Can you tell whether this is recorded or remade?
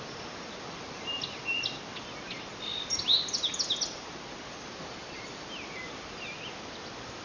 recorded